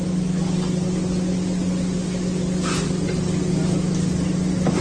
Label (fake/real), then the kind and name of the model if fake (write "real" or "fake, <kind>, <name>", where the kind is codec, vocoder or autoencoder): real